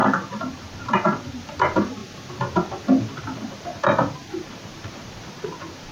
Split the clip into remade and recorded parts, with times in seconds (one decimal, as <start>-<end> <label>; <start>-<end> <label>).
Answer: 0.0-2.0 remade; 2.0-3.2 recorded; 3.2-5.9 remade